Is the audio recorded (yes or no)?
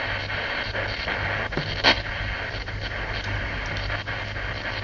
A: yes